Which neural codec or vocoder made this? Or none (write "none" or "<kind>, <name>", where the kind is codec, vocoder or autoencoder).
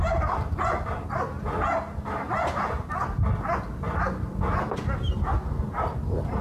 none